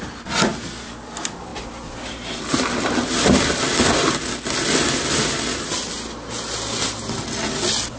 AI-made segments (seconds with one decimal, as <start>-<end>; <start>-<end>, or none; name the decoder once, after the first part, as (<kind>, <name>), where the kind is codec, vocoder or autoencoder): none